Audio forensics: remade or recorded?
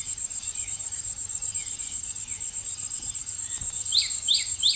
remade